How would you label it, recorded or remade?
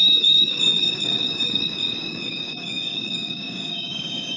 remade